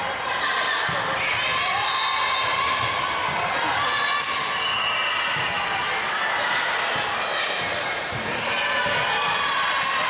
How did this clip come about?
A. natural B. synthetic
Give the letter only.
A